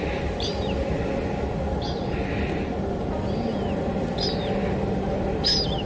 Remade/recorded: recorded